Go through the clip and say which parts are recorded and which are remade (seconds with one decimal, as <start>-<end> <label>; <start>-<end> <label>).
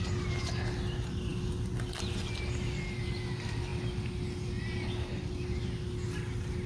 0.0-6.7 recorded